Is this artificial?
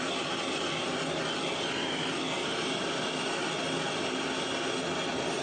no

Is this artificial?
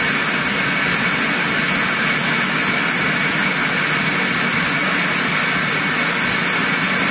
no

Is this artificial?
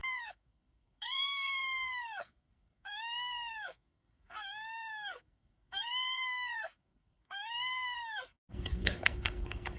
yes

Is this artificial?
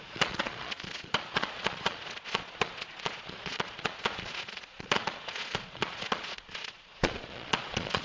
yes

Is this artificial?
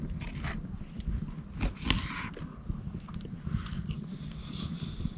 no